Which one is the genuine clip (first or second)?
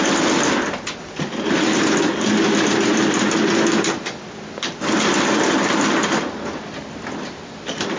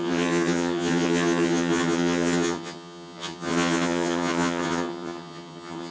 first